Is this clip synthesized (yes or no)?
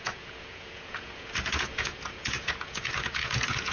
yes